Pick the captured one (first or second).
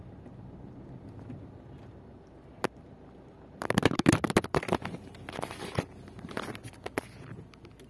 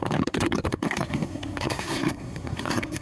first